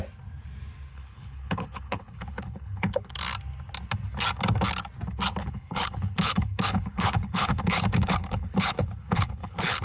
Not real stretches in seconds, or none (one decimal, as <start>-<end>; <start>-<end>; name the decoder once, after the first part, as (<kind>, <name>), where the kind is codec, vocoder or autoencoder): 0.9-3.1 (codec, HILCodec); 5.4-9.8